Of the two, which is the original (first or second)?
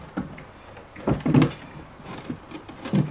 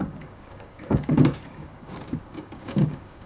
first